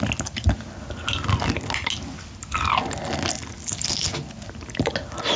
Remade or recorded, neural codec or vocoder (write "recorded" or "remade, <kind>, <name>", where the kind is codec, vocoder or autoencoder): recorded